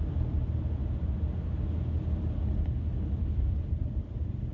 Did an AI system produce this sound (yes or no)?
no